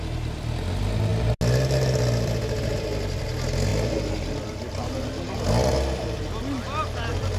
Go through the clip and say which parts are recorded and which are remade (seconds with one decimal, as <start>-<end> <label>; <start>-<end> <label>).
0.0-7.4 recorded